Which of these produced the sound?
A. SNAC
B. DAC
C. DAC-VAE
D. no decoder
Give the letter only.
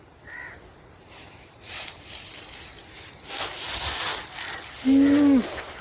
D